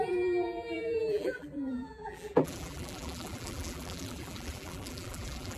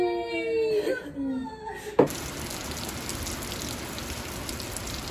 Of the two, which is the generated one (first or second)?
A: first